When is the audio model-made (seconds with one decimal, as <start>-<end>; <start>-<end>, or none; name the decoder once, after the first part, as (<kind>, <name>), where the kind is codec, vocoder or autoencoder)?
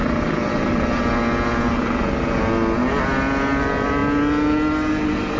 none